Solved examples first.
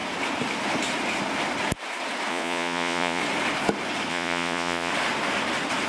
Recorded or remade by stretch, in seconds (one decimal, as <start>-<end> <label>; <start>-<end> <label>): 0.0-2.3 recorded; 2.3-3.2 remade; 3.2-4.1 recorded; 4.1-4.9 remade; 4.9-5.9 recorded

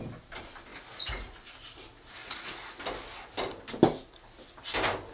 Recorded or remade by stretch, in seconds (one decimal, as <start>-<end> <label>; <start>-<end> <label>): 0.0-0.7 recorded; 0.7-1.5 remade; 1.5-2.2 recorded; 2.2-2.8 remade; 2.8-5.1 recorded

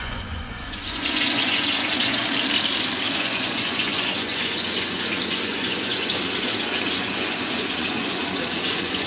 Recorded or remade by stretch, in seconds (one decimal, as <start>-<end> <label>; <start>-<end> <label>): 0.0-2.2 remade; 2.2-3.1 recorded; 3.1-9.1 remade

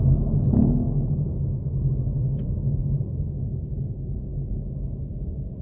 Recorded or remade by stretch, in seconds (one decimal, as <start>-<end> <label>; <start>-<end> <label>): 0.0-5.6 recorded

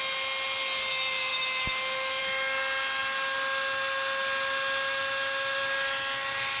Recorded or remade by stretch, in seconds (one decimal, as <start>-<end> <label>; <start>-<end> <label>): 0.0-6.6 recorded

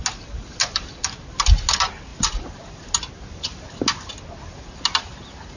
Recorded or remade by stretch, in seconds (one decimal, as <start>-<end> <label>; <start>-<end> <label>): 0.0-5.6 recorded

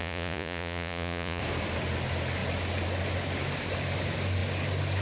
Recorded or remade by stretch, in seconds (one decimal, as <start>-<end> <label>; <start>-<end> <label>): 0.0-1.4 remade; 1.4-5.0 recorded